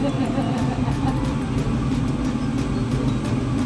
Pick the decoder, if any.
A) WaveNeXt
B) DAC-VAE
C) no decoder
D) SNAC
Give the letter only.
C